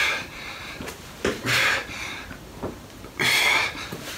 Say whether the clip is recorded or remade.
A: remade